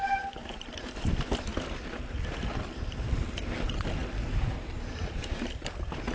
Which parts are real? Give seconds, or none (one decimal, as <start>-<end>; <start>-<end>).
0.0-0.4; 0.9-4.0; 5.4-6.1